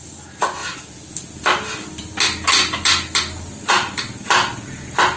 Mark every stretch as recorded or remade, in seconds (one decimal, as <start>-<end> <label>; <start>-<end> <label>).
0.0-5.2 recorded